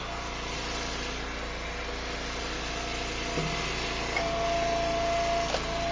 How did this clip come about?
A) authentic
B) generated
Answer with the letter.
A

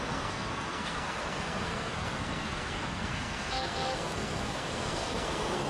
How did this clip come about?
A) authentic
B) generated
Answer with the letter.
B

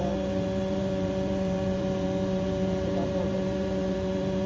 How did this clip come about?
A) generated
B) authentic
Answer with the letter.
A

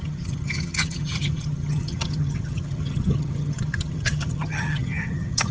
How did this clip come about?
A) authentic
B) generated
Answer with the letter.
B